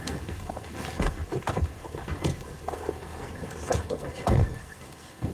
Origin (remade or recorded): remade